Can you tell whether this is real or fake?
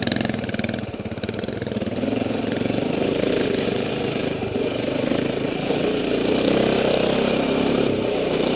fake